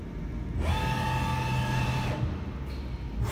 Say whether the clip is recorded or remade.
recorded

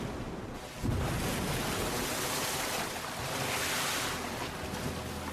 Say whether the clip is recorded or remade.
recorded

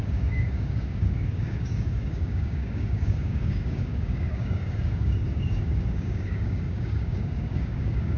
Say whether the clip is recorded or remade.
remade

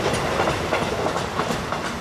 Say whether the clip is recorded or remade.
recorded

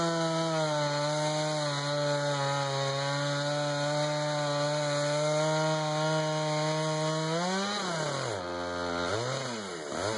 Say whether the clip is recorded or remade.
recorded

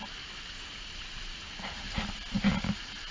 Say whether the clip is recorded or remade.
recorded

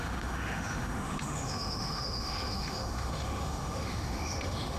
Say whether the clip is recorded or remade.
remade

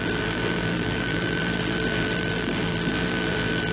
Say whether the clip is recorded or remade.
remade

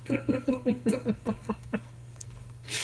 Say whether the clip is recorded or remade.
remade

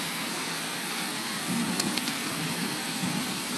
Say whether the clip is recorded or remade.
remade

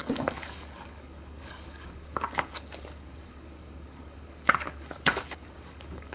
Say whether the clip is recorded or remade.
remade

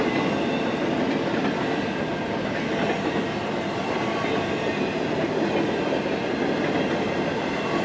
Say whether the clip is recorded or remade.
recorded